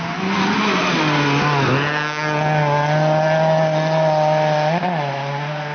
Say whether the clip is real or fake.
real